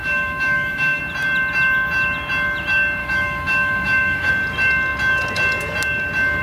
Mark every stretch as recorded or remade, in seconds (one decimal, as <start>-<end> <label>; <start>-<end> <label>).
0.0-1.0 remade; 1.0-3.0 recorded; 3.0-4.3 remade; 4.3-6.4 recorded